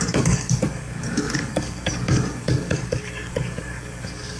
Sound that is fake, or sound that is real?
fake